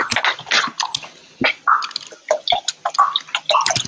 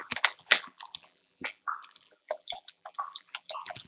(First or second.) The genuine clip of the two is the first